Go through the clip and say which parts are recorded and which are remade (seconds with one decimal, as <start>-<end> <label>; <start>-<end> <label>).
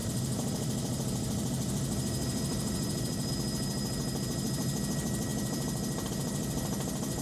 0.0-3.3 remade; 3.3-7.2 recorded